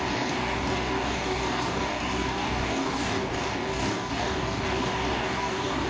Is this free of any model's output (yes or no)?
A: no